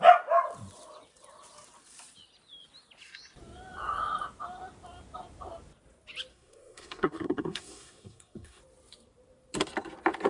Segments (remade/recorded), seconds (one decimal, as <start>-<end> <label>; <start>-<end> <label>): 0.0-6.3 recorded; 6.3-8.6 remade; 8.6-10.3 recorded